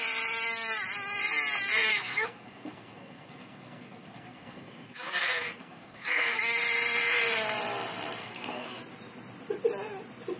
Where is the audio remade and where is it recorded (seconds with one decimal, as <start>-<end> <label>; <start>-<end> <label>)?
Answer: 0.0-1.9 recorded; 1.9-6.4 remade; 6.4-8.2 recorded; 8.2-8.8 remade; 8.8-10.4 recorded